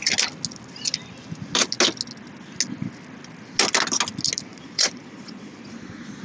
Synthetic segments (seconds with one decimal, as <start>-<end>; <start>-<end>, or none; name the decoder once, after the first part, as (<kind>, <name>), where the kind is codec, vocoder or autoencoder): 4.5-6.2 (vocoder, Vocos)